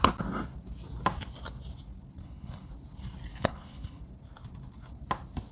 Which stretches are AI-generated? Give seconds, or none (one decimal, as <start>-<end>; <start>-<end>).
2.2-2.7; 3.3-4.0

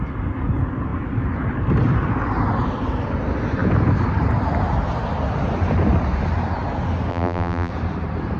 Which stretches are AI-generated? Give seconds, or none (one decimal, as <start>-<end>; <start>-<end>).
7.1-7.7

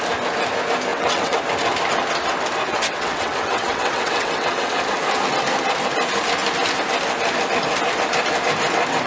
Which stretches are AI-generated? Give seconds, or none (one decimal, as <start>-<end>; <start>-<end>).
0.9-1.4; 2.7-4.8